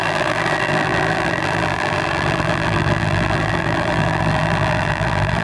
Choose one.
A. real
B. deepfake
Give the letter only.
B